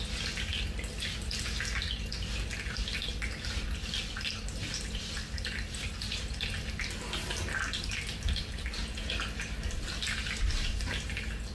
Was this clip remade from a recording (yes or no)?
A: no